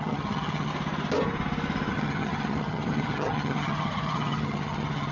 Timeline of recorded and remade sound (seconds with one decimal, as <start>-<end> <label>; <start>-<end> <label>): 0.0-0.7 remade; 0.7-1.9 recorded; 1.9-5.1 remade